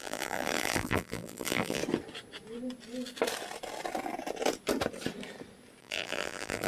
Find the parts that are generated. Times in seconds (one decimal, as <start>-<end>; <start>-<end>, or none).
0.0-1.8; 5.8-6.7